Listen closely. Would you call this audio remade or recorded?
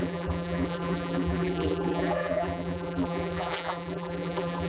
remade